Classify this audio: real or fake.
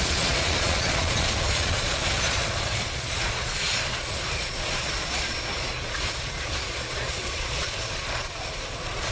fake